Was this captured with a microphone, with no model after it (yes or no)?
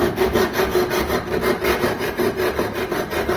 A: yes